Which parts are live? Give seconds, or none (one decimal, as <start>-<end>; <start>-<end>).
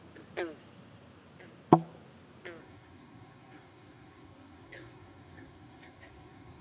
0.0-2.6